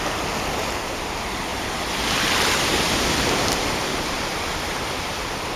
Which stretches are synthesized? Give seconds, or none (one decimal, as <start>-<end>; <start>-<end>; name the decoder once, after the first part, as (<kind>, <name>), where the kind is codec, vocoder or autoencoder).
1.5-4.5 (vocoder, BigVGAN v2)